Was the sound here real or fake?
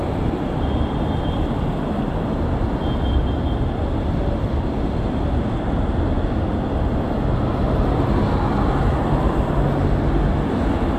real